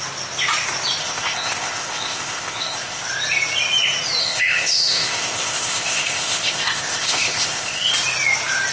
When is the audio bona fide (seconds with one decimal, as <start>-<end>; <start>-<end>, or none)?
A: 0.0-1.0; 3.0-4.2; 7.9-8.7